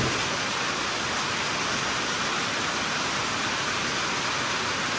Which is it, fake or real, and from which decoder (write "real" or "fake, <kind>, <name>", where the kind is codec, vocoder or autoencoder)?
real